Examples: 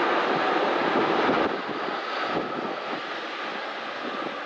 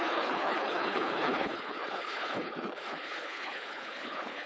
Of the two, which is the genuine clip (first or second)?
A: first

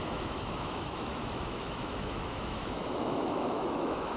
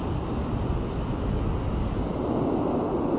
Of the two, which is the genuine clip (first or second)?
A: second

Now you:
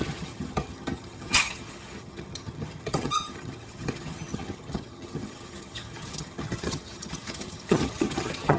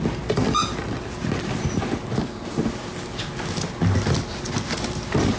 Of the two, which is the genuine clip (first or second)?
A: second